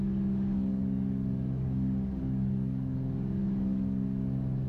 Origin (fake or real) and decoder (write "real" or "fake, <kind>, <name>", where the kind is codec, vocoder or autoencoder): fake, codec, DAC